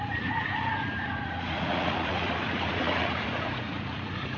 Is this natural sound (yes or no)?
no